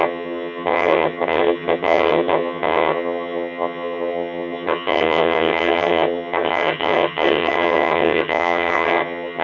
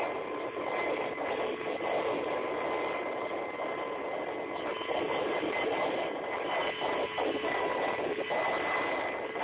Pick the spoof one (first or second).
first